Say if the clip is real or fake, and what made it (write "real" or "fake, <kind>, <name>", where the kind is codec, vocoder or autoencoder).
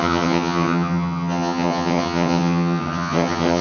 fake, vocoder, HiFi-GAN